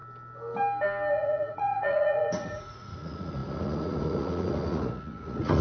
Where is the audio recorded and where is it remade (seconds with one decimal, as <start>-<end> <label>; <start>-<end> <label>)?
0.0-1.1 recorded; 1.1-5.6 remade